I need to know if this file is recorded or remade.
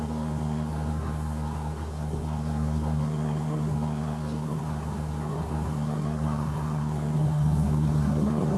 remade